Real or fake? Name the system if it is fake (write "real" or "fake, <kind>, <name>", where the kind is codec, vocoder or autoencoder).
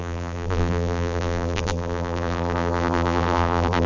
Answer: fake, vocoder, BigVGAN v2